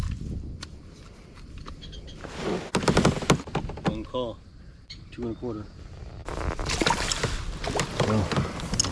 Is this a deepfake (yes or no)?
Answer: no